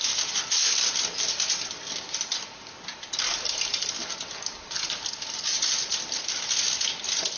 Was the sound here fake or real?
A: real